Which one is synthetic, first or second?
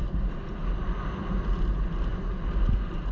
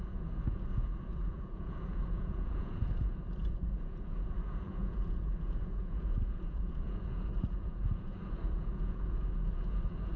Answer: second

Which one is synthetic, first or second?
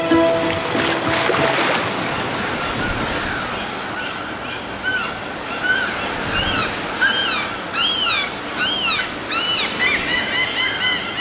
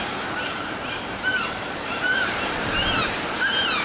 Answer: second